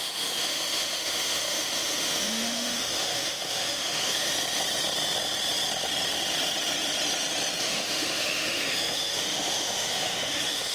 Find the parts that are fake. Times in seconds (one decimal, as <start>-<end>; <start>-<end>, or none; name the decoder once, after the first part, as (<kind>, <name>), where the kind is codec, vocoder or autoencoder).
0.0-4.3 (autoencoder, DAC-VAE); 7.6-10.7